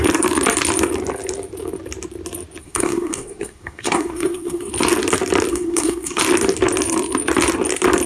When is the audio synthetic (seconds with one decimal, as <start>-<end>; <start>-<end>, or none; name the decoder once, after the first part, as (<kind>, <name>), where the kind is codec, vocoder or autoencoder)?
2.6-4.7 (codec, SNAC); 5.5-6.2